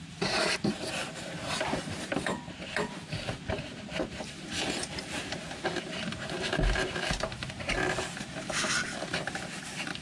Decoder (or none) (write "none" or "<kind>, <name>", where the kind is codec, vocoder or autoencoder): vocoder, BigVGAN v2